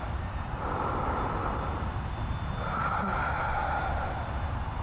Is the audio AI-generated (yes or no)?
yes